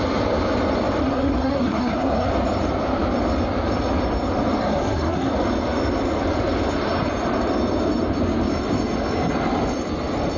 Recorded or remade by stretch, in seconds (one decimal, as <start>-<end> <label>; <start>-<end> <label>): 0.0-1.0 recorded; 1.0-2.3 remade; 2.3-4.6 recorded; 4.6-5.3 remade; 5.3-10.4 recorded